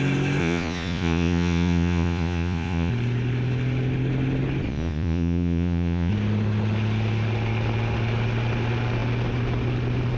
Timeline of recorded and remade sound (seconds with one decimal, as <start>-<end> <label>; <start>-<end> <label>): 0.0-0.4 recorded; 0.4-2.9 remade; 2.9-4.7 recorded; 4.7-6.1 remade; 6.1-10.2 recorded